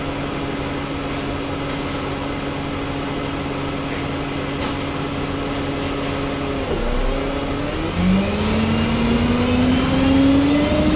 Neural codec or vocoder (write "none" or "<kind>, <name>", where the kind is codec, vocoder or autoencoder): none